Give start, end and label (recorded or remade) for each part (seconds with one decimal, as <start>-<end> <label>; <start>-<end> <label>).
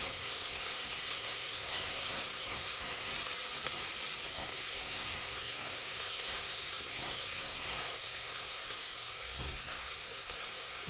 0.0-3.1 remade; 3.1-4.3 recorded; 4.3-10.9 remade